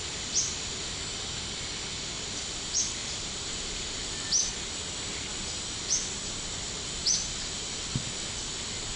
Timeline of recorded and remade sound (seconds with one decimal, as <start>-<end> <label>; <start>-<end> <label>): 0.0-3.0 recorded; 3.0-4.5 remade; 4.5-9.0 recorded